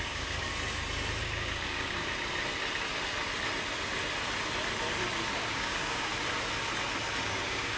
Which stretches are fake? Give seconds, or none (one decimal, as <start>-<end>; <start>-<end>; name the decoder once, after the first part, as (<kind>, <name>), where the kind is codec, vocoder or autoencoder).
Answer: 0.0-0.5 (codec, DAC); 1.2-2.0; 5.3-6.1; 7.2-7.8